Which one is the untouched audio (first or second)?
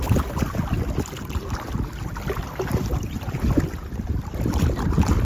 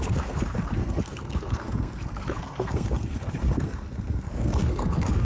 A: first